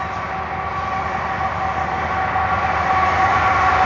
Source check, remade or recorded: recorded